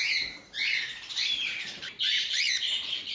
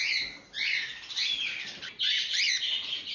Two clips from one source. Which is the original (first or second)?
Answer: second